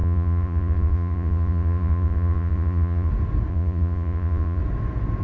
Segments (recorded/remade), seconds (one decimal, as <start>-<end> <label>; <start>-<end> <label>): 0.0-3.1 remade; 3.1-3.5 recorded; 3.5-4.6 remade; 4.6-5.2 recorded